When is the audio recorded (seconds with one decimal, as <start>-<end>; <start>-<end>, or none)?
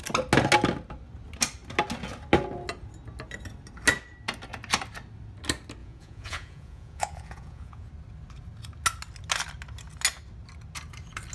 0.0-5.8; 7.9-11.3